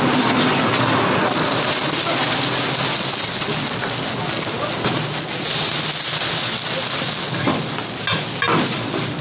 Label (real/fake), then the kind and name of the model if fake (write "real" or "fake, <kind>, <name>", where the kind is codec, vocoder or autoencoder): real